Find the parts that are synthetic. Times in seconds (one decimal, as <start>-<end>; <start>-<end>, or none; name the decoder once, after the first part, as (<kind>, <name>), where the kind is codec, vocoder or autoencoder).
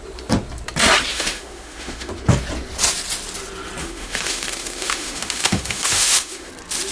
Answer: 1.1-2.1 (autoencoder, DAC-VAE); 3.8-6.5